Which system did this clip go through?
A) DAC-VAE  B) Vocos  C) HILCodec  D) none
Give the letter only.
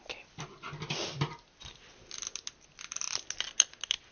D